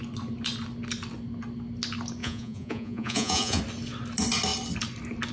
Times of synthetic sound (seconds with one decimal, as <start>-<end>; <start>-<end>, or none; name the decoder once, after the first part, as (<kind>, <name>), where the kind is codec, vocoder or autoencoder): 2.2-3.6 (vocoder, Vocos)